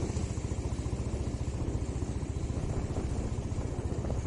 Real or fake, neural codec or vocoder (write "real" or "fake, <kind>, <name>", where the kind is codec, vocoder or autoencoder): real